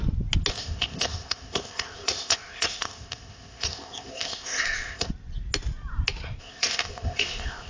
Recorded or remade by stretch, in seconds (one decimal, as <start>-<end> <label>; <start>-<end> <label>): 0.0-0.5 recorded; 0.5-5.1 remade; 5.1-6.4 recorded; 6.4-7.7 remade